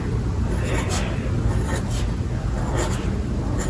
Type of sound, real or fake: real